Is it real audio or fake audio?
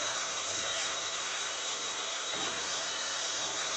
fake